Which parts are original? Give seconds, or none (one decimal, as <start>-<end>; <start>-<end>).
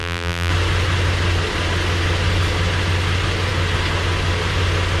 0.5-5.0